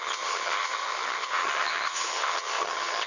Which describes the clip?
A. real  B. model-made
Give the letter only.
B